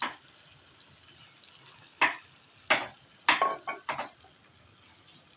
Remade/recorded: recorded